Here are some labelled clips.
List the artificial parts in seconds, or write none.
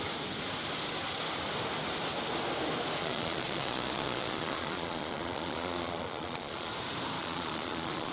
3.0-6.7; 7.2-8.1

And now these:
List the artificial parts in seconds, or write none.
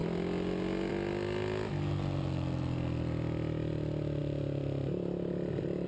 none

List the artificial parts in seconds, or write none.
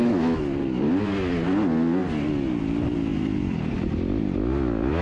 none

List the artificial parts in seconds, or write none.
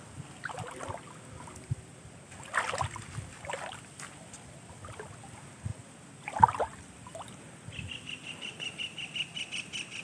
none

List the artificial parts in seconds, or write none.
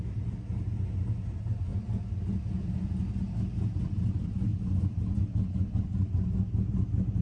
none